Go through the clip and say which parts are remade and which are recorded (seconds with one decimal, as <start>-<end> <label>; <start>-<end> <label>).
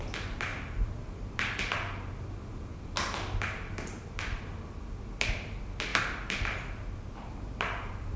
0.0-0.5 recorded; 0.5-1.6 remade; 1.6-5.9 recorded; 5.9-8.2 remade